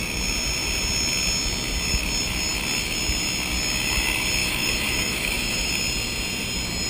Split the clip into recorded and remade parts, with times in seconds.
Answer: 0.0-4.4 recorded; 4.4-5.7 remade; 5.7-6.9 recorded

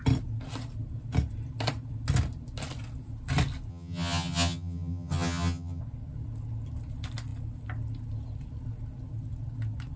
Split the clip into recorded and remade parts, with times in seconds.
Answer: 0.0-3.7 recorded; 3.7-5.8 remade; 5.8-10.0 recorded